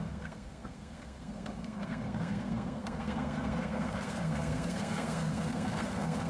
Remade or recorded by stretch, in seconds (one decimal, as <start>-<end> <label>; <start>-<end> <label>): 0.0-6.3 remade